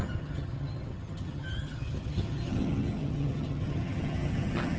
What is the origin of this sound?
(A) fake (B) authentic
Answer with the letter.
A